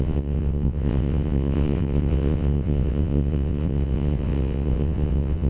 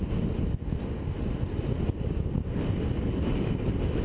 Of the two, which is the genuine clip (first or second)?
second